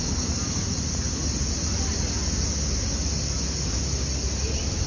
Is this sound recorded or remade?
recorded